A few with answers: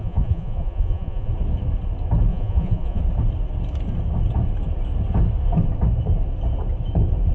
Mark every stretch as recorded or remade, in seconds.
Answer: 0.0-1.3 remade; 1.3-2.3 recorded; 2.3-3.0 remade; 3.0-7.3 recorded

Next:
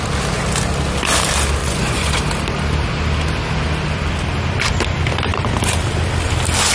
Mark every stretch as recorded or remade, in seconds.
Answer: 0.0-1.6 recorded; 1.6-2.2 remade; 2.2-6.7 recorded

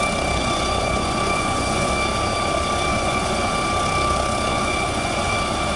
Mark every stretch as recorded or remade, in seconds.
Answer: 0.0-0.4 recorded; 0.4-1.9 remade; 1.9-2.9 recorded; 2.9-3.5 remade; 3.5-4.5 recorded; 4.5-5.3 remade; 5.3-5.8 recorded

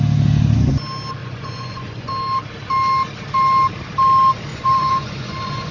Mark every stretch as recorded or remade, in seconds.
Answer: 0.0-1.2 recorded; 1.2-2.1 remade; 2.1-4.5 recorded; 4.5-5.7 remade

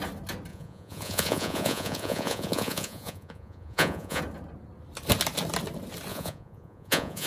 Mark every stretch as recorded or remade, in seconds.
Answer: 0.0-0.5 recorded; 0.5-4.2 remade; 4.2-6.1 recorded; 6.1-7.3 remade